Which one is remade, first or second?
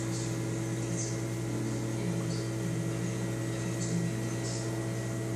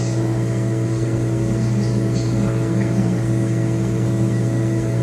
second